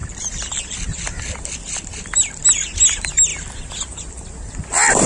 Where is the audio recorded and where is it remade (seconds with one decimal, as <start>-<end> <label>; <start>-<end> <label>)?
0.0-5.1 recorded

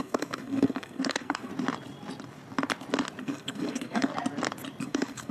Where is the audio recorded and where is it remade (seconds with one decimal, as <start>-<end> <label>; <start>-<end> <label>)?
0.0-1.5 remade; 1.5-3.2 recorded; 3.2-4.1 remade; 4.1-4.8 recorded; 4.8-5.3 remade

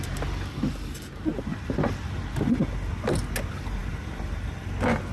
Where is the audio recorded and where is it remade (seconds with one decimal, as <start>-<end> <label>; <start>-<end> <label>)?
0.0-5.1 recorded

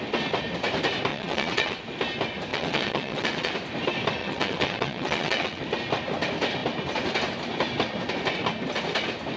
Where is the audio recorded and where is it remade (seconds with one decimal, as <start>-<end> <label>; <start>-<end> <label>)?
0.0-1.1 recorded; 1.1-1.8 remade; 1.8-2.5 recorded; 2.5-3.5 remade; 3.5-4.2 recorded; 4.2-5.6 remade; 5.6-9.4 recorded

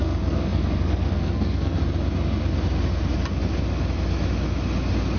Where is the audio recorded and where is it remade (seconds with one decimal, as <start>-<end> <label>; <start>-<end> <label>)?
0.0-1.8 remade; 1.8-5.2 recorded

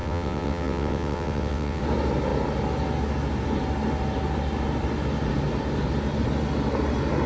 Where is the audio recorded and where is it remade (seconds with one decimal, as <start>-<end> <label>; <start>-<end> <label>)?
0.0-1.8 remade; 1.8-7.3 recorded

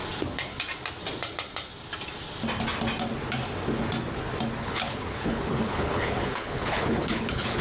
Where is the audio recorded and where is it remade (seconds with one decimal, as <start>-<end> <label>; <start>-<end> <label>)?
0.0-4.6 recorded; 4.6-7.6 remade